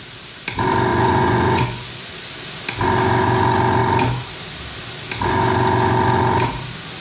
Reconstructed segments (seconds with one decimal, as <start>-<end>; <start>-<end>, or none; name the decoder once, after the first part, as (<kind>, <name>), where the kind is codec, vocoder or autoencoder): 0.9-2.1 (vocoder, Vocos)